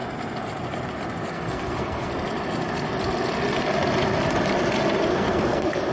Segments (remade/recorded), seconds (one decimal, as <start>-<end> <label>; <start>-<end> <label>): 0.0-1.3 recorded; 1.3-2.1 remade; 2.1-5.1 recorded; 5.1-5.9 remade